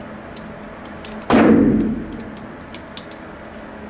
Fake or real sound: real